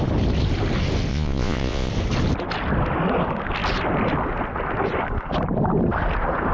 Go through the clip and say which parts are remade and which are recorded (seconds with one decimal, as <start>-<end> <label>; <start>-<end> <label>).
0.0-1.1 recorded; 1.1-1.9 remade; 1.9-6.5 recorded